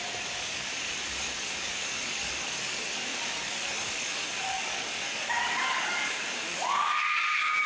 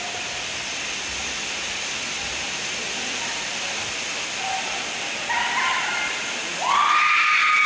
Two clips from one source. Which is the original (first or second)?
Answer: second